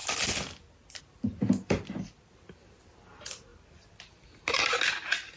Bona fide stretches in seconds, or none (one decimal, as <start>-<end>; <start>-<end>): 0.0-3.5; 4.9-5.4